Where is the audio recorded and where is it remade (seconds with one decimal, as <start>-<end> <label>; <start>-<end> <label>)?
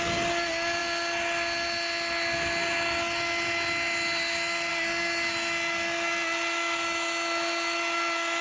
0.0-8.4 recorded